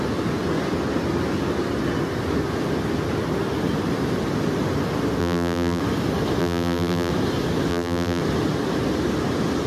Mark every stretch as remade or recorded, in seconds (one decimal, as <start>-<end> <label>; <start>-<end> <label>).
0.0-5.2 recorded; 5.2-5.8 remade; 5.8-6.4 recorded; 6.4-7.1 remade; 7.1-7.7 recorded; 7.7-8.2 remade; 8.2-9.7 recorded

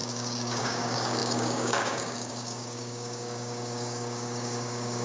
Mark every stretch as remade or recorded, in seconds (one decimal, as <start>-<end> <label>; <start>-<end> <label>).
0.0-5.0 remade

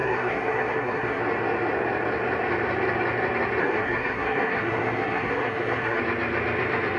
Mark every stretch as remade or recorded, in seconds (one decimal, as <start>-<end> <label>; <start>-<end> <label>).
0.0-1.2 remade; 1.2-3.6 recorded; 3.6-6.0 remade; 6.0-7.0 recorded

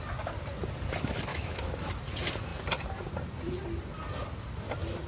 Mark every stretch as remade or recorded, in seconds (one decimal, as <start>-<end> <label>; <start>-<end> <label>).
0.0-1.3 recorded; 1.3-1.9 remade; 1.9-5.1 recorded

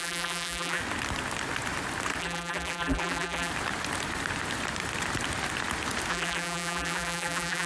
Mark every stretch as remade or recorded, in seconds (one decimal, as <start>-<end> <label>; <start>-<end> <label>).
0.0-0.8 remade; 0.8-2.2 recorded; 2.2-3.5 remade; 3.5-6.1 recorded; 6.1-7.7 remade

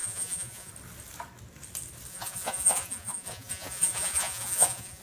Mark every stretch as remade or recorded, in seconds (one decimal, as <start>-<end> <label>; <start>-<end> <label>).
0.0-0.7 remade; 0.7-2.1 recorded; 2.1-5.0 remade

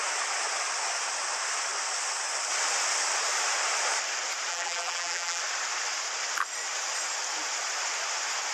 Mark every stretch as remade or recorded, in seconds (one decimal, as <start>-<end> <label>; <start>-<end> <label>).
0.0-4.5 recorded; 4.5-5.4 remade; 5.4-8.5 recorded